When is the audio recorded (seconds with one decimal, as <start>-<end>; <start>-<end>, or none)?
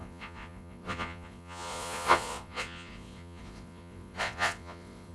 none